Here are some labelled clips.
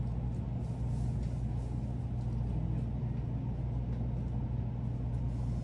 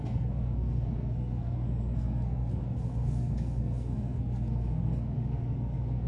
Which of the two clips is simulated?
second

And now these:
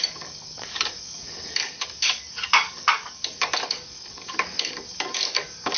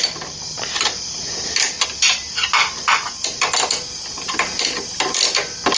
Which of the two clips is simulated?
first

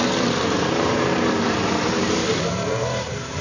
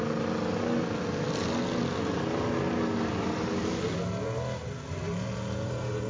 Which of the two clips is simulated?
first